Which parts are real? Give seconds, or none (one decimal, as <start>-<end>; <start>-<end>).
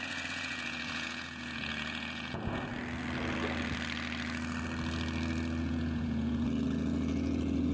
2.7-5.6